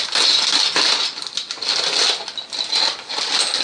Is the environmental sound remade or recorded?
recorded